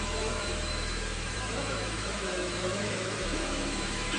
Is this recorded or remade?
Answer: remade